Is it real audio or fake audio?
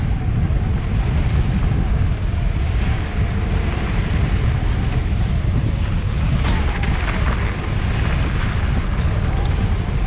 real